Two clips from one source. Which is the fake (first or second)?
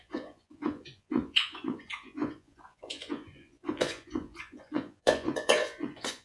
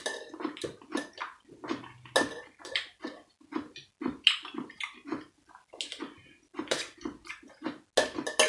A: first